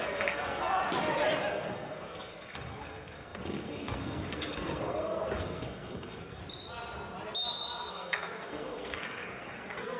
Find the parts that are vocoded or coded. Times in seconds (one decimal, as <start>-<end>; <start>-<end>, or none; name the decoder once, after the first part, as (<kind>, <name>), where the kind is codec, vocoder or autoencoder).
0.0-0.8 (codec, SNAC); 1.5-6.4; 7.9-10.0